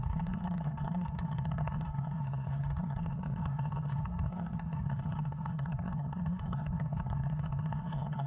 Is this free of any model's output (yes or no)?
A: no